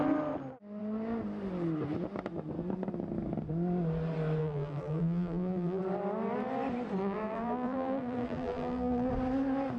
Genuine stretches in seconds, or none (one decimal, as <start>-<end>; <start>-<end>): 0.0-4.4; 5.8-7.0; 9.1-9.8